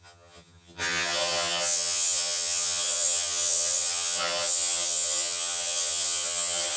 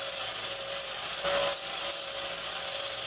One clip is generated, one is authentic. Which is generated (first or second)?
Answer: first